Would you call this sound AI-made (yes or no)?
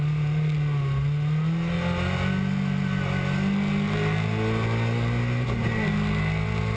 no